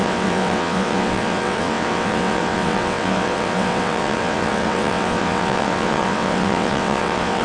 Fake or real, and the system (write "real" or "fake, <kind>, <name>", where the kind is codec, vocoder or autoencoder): fake, vocoder, WaveNeXt